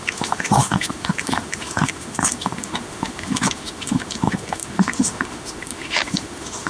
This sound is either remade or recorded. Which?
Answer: remade